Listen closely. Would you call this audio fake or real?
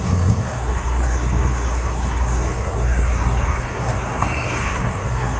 fake